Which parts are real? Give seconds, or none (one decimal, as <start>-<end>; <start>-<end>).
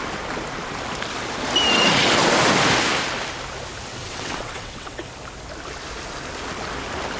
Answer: 0.0-3.9; 5.1-7.2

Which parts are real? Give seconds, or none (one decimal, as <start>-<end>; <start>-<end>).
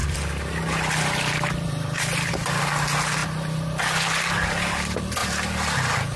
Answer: 2.3-3.2; 4.3-5.2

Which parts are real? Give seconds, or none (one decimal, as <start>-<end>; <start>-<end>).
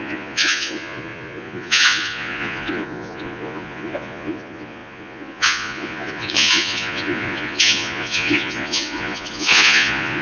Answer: none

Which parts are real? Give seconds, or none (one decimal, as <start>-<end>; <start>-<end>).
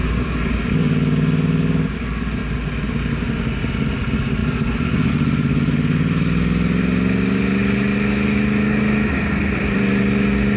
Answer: 0.5-10.6